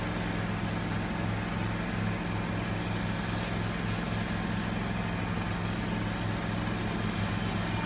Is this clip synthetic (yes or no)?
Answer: no